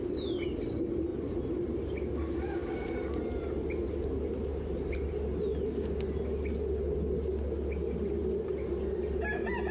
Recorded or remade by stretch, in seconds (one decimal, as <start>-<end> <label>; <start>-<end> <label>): 0.0-1.1 recorded; 1.1-1.6 remade; 1.6-2.6 recorded; 2.6-3.7 remade; 3.7-8.2 recorded; 8.2-8.8 remade; 8.8-9.7 recorded